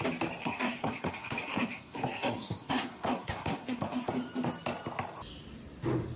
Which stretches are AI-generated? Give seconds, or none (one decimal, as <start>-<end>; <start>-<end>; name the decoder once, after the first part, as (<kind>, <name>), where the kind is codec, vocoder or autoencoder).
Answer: 0.4-4.1 (codec, SNAC)